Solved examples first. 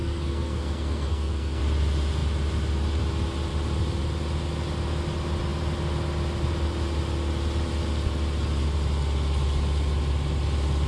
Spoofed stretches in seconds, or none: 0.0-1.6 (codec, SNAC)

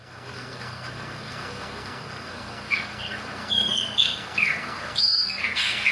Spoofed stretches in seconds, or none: 0.0-5.9 (codec, SNAC)

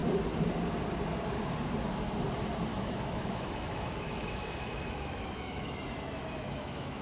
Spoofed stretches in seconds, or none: 2.7-7.0 (autoencoder, DAC-VAE)

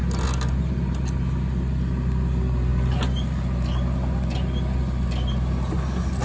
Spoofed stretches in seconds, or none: none